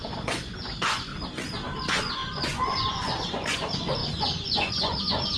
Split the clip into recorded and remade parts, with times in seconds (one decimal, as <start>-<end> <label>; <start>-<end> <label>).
0.0-1.1 remade; 1.1-1.8 recorded; 1.8-5.4 remade